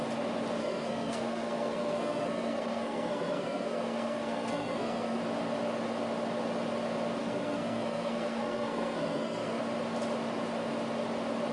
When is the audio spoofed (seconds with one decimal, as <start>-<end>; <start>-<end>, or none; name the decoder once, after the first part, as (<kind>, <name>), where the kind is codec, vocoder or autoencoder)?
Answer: 0.6-5.2 (codec, SNAC); 7.2-9.6

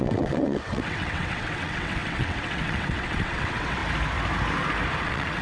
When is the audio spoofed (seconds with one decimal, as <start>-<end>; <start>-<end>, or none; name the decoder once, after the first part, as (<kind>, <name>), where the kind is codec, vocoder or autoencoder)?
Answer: 0.0-3.8 (vocoder, WaveNeXt); 5.0-5.4

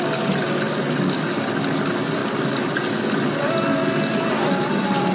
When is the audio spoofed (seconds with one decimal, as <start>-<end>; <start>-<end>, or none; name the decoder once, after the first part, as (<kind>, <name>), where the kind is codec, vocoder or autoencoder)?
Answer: none